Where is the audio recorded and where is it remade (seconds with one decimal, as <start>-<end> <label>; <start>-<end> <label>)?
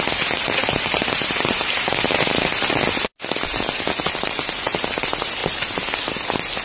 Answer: 0.0-0.6 recorded; 0.6-2.4 remade; 2.4-6.6 recorded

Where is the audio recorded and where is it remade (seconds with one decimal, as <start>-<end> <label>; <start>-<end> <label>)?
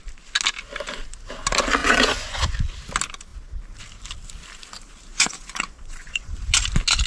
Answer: 0.0-1.8 recorded; 1.8-2.5 remade; 2.5-5.1 recorded; 5.1-6.3 remade; 6.3-7.1 recorded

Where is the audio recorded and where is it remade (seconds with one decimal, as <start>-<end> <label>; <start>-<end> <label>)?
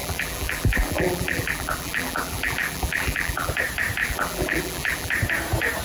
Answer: 0.0-3.5 remade; 3.5-4.0 recorded; 4.0-5.1 remade; 5.1-5.8 recorded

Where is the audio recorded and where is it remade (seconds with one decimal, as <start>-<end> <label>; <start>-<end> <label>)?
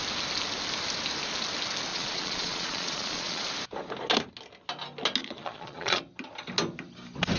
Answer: 0.0-1.9 recorded; 1.9-3.4 remade; 3.4-5.2 recorded; 5.2-6.0 remade; 6.0-7.4 recorded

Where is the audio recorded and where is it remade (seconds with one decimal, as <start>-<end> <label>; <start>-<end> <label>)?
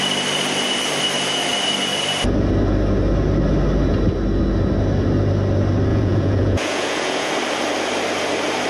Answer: 0.0-5.9 recorded; 5.9-7.3 remade; 7.3-8.7 recorded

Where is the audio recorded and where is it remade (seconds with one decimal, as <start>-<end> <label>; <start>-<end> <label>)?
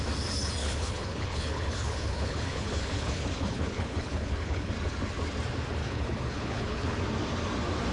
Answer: 0.0-0.6 recorded; 0.6-4.7 remade; 4.7-5.8 recorded; 5.8-7.0 remade; 7.0-7.9 recorded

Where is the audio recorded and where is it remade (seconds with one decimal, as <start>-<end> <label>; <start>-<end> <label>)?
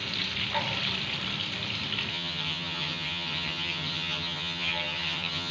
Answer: 0.0-2.1 recorded; 2.1-5.5 remade